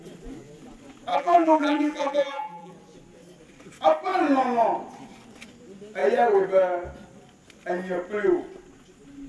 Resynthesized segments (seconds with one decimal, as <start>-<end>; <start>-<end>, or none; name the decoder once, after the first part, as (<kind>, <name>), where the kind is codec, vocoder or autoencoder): 1.1-2.7 (vocoder, BigVGAN v2)